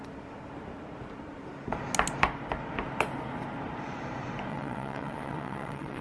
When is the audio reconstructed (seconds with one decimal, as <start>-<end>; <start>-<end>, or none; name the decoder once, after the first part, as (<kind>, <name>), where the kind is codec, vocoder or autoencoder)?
4.5-6.0 (vocoder, WaveNeXt)